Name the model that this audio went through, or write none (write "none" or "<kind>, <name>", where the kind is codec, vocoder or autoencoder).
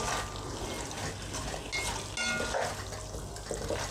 none